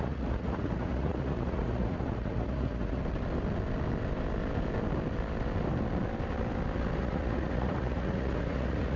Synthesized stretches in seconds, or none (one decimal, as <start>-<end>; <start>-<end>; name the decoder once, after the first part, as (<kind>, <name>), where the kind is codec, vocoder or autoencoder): 0.0-3.0 (vocoder, Vocos); 7.0-9.0